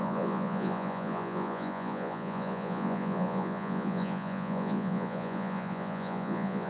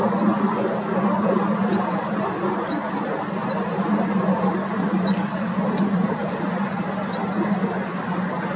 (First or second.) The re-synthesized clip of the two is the first